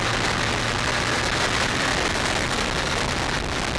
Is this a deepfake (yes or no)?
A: no